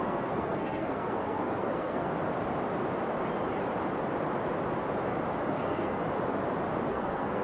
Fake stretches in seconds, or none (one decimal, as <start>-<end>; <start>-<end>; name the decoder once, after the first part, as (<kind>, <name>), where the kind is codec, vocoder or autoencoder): 0.0-2.1 (codec, SNAC); 5.5-6.0; 6.9-7.4